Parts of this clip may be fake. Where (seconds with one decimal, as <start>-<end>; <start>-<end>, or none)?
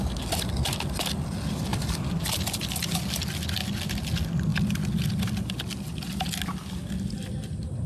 none